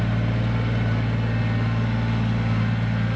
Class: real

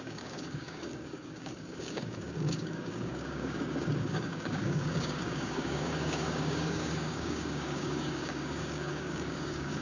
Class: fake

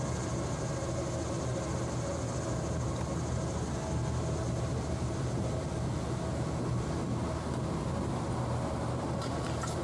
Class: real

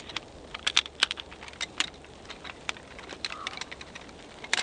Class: fake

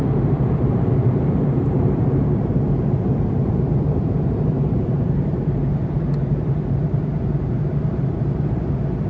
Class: fake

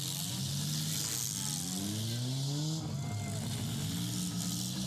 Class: real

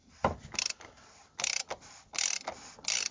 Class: real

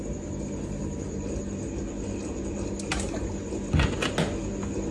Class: real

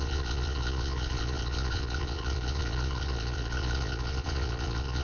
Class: fake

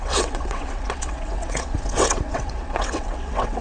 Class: fake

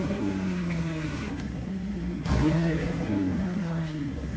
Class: fake